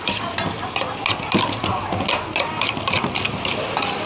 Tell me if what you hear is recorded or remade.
recorded